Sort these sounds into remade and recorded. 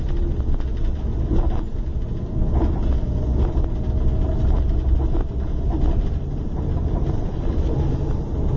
recorded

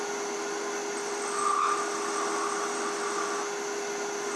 recorded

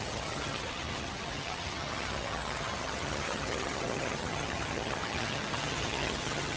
remade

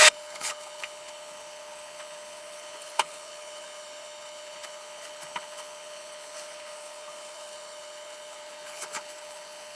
remade